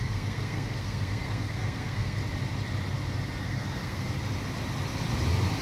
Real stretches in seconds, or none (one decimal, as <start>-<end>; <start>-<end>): 2.2-3.4; 4.1-5.6